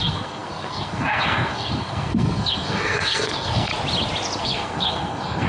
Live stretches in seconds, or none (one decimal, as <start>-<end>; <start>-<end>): 3.7-4.4